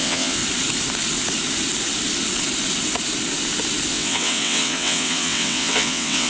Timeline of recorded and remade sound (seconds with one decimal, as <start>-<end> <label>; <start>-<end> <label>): 0.0-0.4 remade; 0.4-3.9 recorded; 3.9-6.3 remade